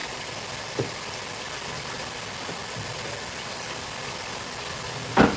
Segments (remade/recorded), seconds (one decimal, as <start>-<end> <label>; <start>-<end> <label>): 0.0-5.4 recorded